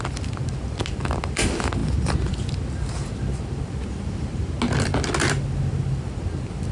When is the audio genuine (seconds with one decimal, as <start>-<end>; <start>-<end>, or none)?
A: 0.0-6.7

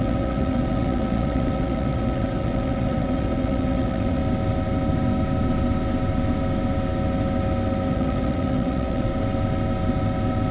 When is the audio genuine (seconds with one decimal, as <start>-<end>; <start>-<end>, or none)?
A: 4.2-7.9; 9.1-10.5